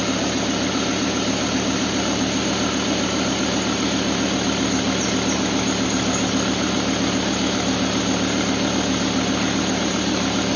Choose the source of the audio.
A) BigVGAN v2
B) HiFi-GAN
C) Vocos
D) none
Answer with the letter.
D